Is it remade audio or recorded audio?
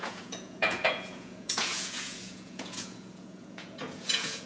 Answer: remade